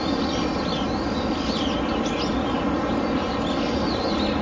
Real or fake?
real